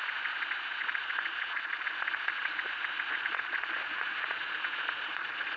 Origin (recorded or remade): remade